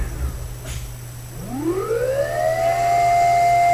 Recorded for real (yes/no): yes